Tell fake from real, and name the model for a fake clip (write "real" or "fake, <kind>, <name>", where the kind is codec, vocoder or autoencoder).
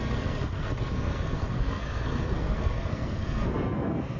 fake, codec, SNAC